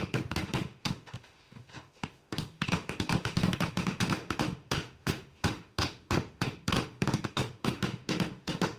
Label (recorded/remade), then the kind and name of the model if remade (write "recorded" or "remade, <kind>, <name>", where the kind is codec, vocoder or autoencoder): remade, autoencoder, DAC-VAE